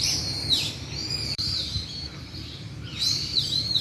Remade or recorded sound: remade